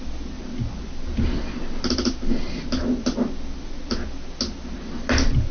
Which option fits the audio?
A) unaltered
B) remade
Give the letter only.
A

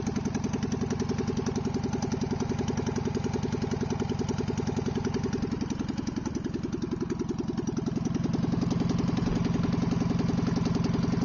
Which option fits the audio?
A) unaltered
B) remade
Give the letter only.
A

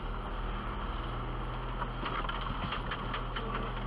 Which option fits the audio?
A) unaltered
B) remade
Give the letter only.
A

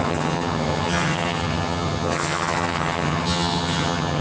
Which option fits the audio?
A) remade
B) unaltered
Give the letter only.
A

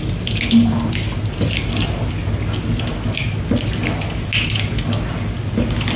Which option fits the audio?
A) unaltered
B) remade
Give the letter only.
A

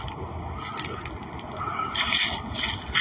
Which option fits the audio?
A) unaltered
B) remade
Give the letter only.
A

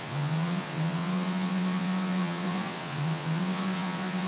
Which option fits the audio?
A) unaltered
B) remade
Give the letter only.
B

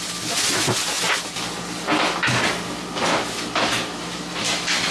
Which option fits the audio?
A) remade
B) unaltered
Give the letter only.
B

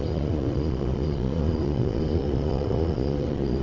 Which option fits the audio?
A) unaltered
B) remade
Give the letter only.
B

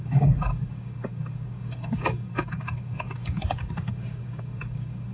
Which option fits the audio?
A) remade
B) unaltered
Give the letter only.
A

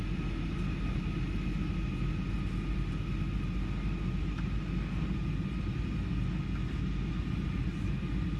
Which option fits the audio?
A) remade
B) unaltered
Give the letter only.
B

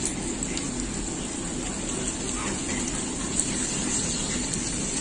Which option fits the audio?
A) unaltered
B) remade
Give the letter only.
A